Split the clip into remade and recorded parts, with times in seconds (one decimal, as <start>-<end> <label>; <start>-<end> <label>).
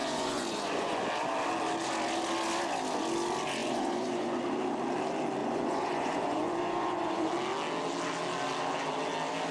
0.0-1.0 remade; 1.0-3.6 recorded; 3.6-4.4 remade; 4.4-5.4 recorded; 5.4-7.3 remade; 7.3-9.5 recorded